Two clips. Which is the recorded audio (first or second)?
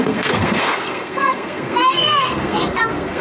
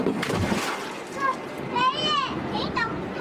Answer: second